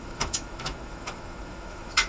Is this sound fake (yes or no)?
yes